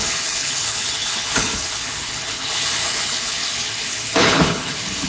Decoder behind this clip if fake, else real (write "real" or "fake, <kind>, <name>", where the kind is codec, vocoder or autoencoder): fake, codec, HILCodec